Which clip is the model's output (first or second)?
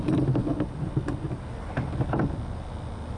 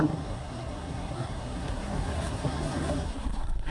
second